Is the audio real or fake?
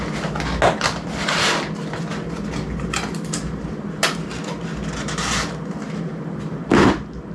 real